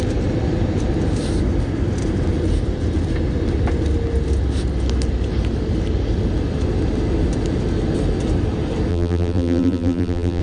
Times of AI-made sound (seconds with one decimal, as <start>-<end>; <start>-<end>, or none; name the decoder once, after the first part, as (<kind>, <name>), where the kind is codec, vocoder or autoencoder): 8.9-10.4 (vocoder, BigVGAN v2)